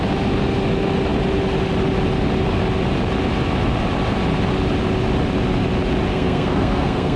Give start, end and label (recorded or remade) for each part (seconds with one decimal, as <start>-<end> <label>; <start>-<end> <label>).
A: 0.0-6.1 recorded; 6.1-7.2 remade